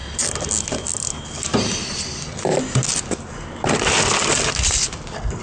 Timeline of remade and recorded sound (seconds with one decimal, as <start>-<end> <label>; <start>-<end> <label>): 0.0-5.4 recorded